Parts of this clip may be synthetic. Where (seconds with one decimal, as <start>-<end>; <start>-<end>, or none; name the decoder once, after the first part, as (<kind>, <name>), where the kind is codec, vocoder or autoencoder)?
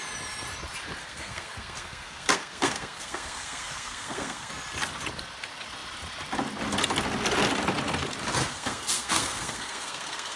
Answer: 1.0-4.5 (codec, SNAC); 8.4-10.4